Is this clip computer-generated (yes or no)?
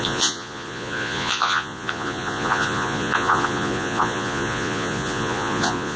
yes